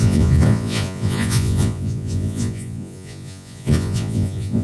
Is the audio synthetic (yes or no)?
yes